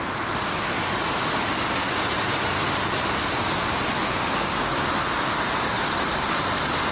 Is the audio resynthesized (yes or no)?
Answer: no